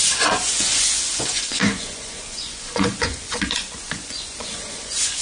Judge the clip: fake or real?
fake